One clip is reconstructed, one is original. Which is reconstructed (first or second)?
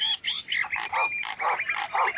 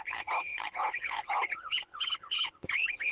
second